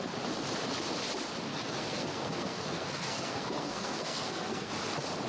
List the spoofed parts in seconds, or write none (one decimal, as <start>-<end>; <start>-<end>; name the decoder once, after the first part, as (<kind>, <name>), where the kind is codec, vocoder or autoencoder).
1.5-4.7 (codec, SNAC)

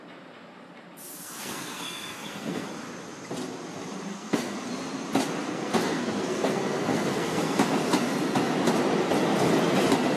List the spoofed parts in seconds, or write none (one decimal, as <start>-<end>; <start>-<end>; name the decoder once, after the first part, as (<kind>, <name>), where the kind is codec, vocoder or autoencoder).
1.1-2.7 (codec, SNAC); 4.1-4.7; 5.4-7.8